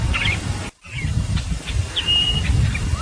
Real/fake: real